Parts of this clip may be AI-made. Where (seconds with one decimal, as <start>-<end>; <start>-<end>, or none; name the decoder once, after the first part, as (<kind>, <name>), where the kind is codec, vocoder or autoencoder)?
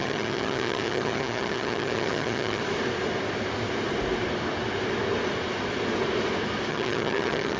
0.0-2.6 (vocoder, HiFi-GAN); 6.7-7.6